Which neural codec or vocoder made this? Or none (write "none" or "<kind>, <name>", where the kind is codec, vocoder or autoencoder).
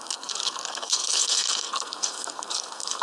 codec, SNAC